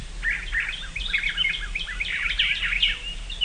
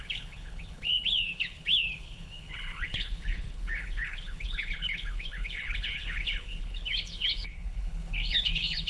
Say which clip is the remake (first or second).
second